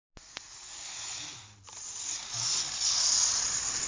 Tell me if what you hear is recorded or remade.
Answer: recorded